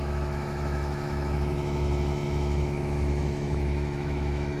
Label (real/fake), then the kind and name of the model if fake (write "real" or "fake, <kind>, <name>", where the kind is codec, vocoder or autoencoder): fake, autoencoder, DAC-VAE